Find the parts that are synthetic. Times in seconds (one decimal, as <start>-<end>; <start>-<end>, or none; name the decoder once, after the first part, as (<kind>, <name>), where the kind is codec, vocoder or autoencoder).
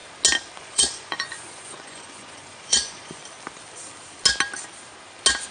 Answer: 0.6-3.2 (vocoder, Vocos)